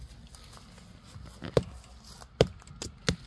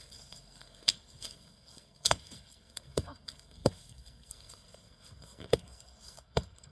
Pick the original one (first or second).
first